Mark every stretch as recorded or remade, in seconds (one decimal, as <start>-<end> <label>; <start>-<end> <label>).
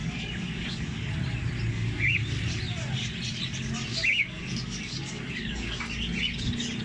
0.0-1.1 remade; 1.1-1.7 recorded; 1.7-2.2 remade; 2.2-3.9 recorded; 3.9-5.8 remade; 5.8-6.8 recorded